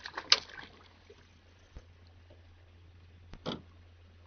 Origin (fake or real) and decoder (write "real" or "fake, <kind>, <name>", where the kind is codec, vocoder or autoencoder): real